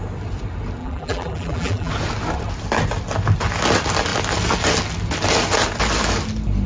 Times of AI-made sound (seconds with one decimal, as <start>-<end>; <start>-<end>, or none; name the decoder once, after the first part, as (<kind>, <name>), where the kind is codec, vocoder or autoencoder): 0.8-1.9 (vocoder, BigVGAN v2)